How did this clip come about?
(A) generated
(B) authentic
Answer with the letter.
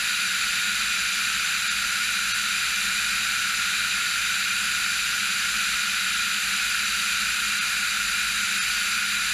B